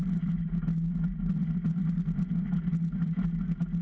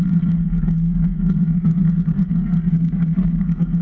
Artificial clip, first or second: second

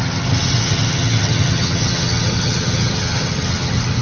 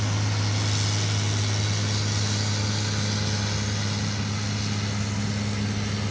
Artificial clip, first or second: first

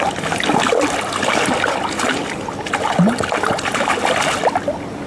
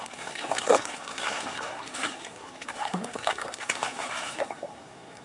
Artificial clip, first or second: second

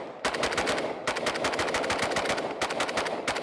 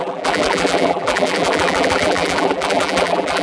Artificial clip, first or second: second